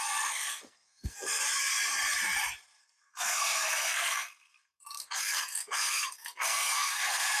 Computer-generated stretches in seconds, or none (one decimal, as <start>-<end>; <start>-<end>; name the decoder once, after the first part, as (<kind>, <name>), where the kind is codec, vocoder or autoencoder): 0.0-1.4 (codec, SNAC); 2.8-7.4